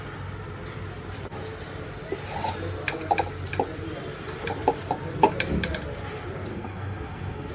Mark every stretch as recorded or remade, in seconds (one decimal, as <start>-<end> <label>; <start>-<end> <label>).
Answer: 0.0-6.5 recorded; 6.5-7.5 remade